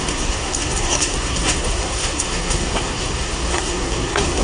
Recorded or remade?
remade